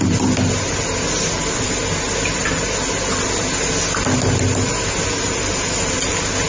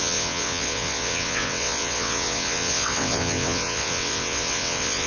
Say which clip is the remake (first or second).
second